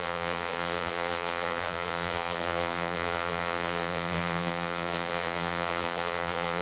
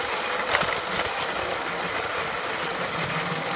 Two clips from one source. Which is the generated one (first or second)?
first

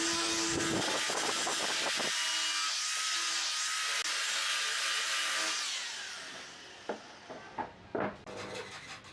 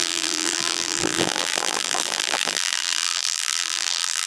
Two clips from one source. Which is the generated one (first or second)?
second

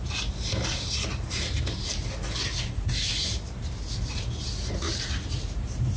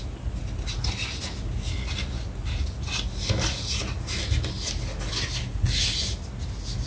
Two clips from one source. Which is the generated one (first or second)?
first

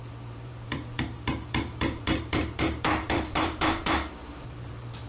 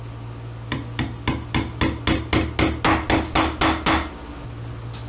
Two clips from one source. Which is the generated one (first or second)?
first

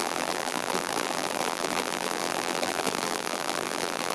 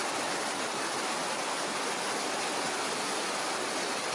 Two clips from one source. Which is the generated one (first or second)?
first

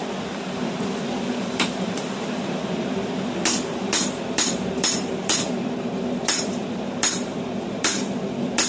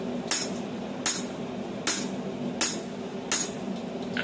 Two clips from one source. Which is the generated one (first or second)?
first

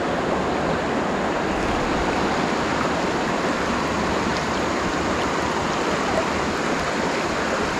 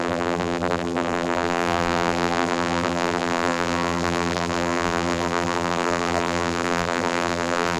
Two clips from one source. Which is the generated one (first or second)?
second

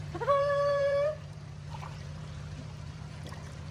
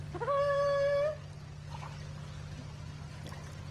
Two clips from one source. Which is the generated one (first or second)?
first